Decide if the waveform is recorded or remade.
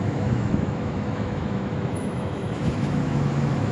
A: remade